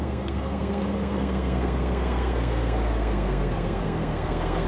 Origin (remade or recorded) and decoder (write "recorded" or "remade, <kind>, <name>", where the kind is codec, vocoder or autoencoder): remade, codec, SNAC